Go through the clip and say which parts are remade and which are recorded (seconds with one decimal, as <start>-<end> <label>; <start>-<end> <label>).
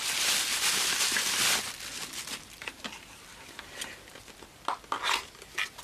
0.0-5.8 recorded